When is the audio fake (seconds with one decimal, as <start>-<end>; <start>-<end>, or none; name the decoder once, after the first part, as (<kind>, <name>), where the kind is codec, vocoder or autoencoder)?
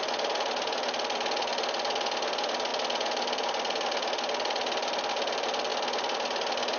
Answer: none